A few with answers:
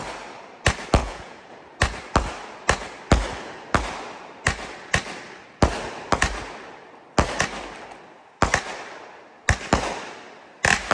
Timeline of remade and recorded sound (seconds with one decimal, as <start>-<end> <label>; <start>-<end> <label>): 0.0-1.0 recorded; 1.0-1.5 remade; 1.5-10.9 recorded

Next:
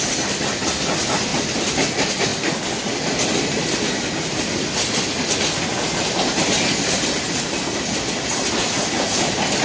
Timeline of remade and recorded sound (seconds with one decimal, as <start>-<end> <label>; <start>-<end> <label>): 0.0-9.6 recorded

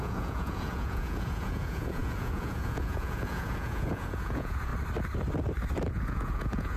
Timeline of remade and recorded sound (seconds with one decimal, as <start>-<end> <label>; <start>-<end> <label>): 0.0-4.7 remade; 4.7-5.9 recorded; 5.9-6.8 remade